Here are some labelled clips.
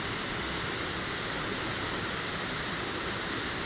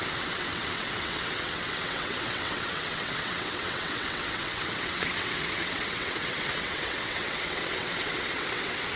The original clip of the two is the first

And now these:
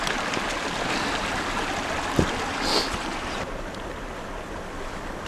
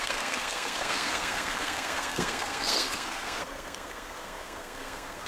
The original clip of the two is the first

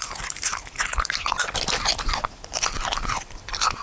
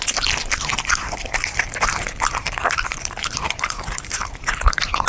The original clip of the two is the first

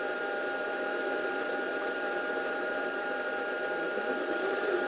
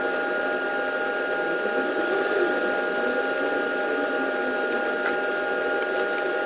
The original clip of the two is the second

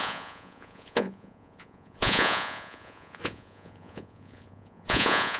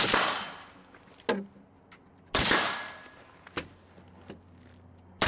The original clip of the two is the second